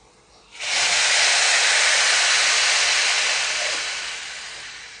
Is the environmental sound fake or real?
real